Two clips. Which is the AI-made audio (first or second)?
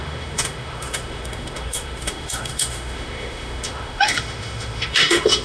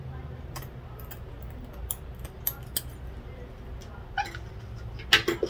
first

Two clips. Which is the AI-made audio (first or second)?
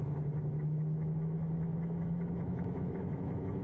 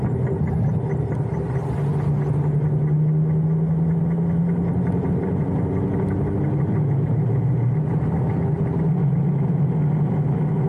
first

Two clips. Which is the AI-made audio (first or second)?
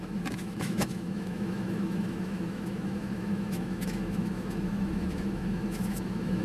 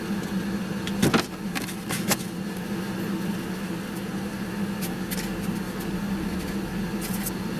first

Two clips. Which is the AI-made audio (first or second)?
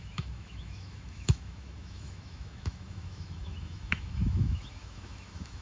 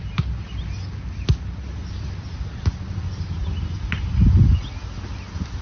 first